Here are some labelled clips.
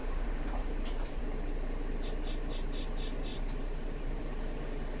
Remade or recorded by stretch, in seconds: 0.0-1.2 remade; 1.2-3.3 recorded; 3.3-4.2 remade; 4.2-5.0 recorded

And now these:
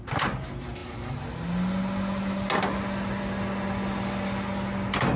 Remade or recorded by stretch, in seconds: 0.0-5.2 recorded